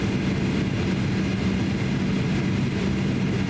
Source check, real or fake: real